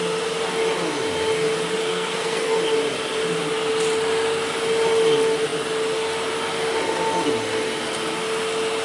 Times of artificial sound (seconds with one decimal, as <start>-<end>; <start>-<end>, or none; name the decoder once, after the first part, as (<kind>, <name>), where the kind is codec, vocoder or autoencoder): 1.8-2.6 (codec, SNAC)